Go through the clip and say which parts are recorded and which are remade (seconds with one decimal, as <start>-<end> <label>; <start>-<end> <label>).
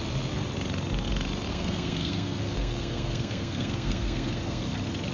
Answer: 0.0-1.5 recorded; 1.5-4.6 remade; 4.6-5.1 recorded